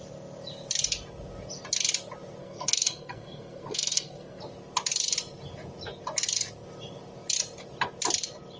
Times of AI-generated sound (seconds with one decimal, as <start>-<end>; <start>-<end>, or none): 2.4-4.4